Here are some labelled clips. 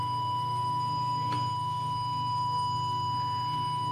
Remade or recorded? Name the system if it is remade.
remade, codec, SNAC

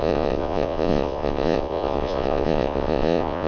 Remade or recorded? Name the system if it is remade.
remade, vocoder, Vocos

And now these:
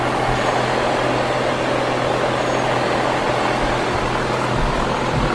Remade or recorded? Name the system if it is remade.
recorded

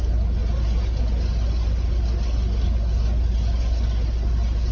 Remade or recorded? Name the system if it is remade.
recorded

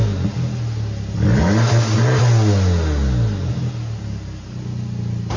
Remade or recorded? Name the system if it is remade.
recorded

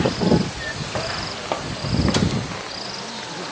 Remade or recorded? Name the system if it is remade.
recorded